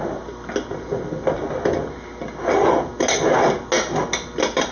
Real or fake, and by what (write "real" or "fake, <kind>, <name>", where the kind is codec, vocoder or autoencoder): real